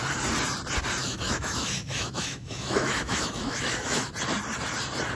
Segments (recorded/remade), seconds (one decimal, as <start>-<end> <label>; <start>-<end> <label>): 0.0-1.0 recorded; 1.0-4.1 remade; 4.1-5.2 recorded